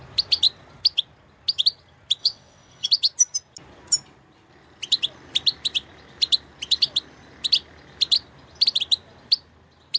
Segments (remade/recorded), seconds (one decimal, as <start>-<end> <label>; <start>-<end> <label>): 0.0-2.2 recorded; 2.2-2.9 remade; 2.9-10.0 recorded